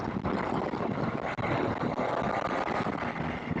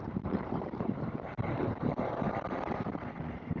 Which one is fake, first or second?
second